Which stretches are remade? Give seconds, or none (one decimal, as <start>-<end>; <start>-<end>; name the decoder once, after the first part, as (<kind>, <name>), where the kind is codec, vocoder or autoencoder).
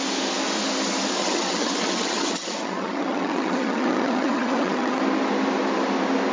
1.2-5.0 (vocoder, HiFi-GAN)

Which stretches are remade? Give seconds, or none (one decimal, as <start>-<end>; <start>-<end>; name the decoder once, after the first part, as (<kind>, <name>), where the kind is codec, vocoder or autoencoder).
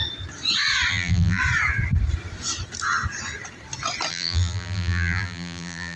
0.9-1.4 (vocoder, BigVGAN v2); 4.1-6.0